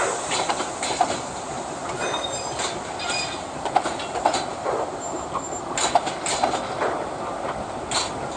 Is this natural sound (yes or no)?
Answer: yes